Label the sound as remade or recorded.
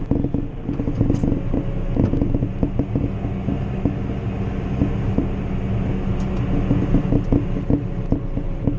recorded